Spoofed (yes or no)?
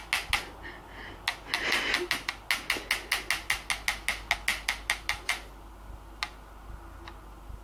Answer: no